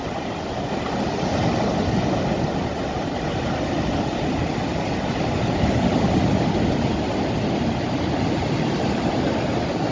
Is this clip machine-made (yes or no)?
no